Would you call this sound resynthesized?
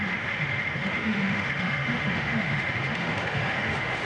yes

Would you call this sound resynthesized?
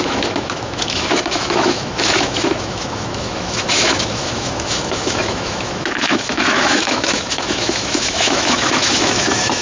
yes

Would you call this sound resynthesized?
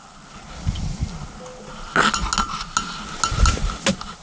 no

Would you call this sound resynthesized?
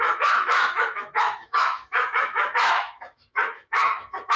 yes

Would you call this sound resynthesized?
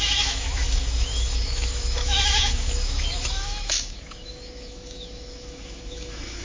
yes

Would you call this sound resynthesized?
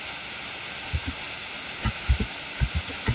no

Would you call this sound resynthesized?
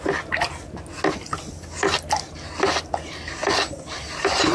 no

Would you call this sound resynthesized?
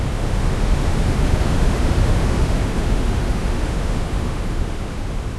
yes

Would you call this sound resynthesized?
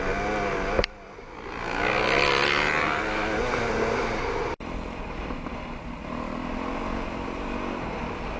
no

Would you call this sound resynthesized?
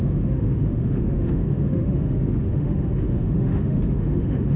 yes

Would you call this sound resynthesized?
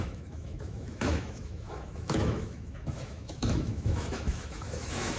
yes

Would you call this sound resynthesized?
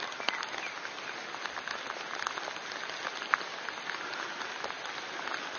no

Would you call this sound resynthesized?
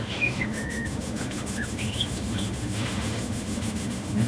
yes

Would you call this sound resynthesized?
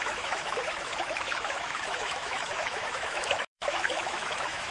yes